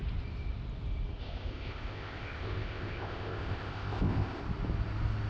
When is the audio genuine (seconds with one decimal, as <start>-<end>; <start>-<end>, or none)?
0.0-1.2; 4.4-5.3